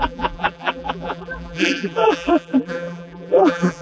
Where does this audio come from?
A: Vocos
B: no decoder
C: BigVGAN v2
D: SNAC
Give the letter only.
C